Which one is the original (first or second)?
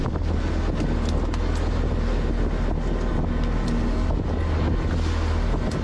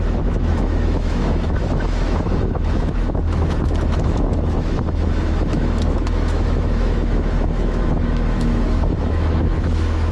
first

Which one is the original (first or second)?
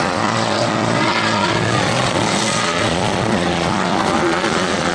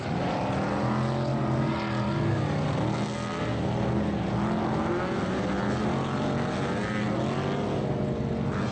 second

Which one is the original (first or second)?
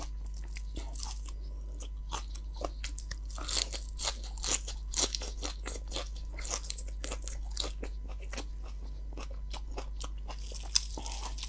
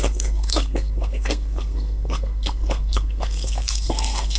first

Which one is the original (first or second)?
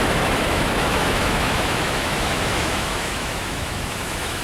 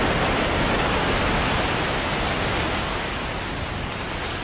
second